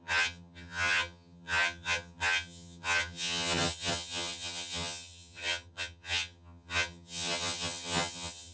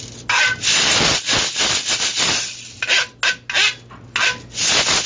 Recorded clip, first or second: second